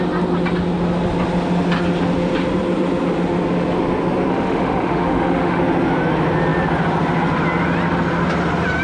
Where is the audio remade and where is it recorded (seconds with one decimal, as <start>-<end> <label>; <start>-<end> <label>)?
0.0-4.3 recorded; 4.3-5.6 remade; 5.6-8.8 recorded